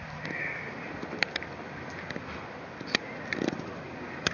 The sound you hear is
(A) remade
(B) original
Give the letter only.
B